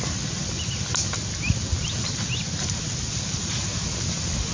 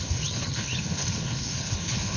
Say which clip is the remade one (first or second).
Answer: second